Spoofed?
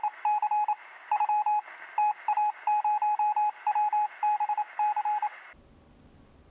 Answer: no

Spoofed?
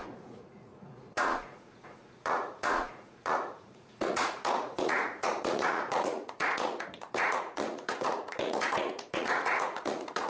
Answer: yes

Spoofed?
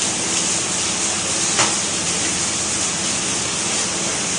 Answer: no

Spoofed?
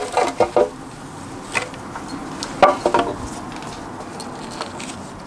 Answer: no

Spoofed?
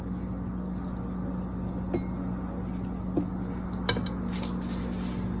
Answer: no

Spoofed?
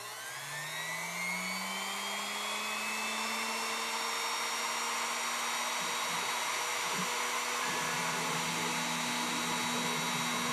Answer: no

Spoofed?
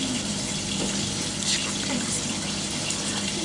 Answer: no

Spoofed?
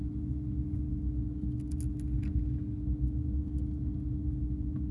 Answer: no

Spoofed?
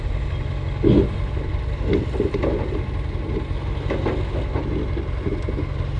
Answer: no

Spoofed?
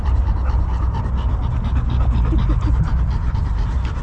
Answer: no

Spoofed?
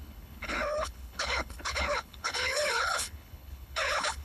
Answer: yes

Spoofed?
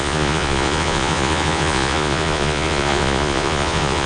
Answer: yes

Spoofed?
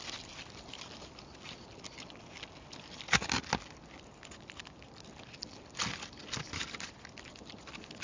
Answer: no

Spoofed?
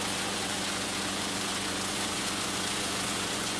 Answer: yes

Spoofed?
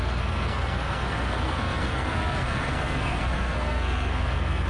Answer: yes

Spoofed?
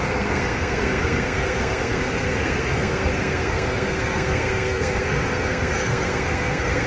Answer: yes